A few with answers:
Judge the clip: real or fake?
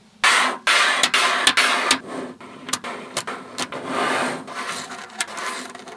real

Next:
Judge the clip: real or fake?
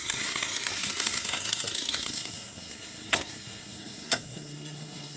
fake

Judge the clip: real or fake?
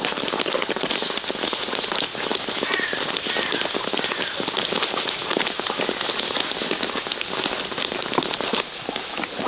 real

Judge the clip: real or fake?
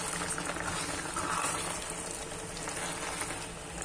real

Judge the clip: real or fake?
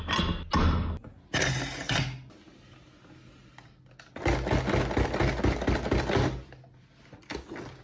real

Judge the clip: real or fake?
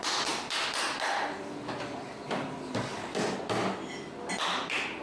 real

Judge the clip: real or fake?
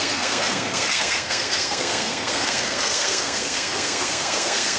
fake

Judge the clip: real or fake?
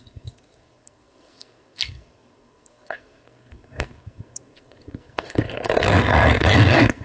fake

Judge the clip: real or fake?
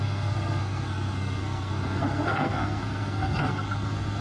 fake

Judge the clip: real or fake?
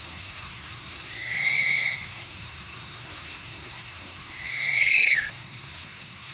fake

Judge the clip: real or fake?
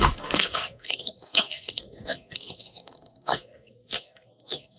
fake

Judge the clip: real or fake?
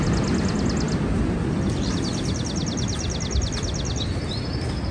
real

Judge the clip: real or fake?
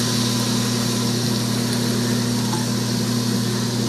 real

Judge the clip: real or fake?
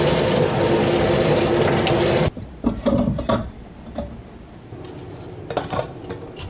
real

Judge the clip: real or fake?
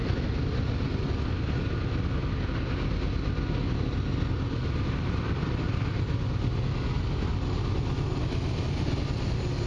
real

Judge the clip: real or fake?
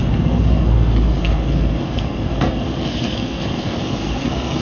fake